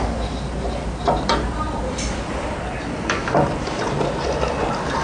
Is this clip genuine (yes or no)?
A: yes